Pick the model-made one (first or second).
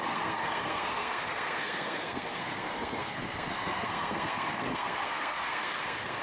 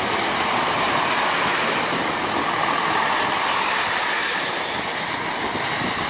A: first